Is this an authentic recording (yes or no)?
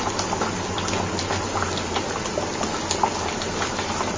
yes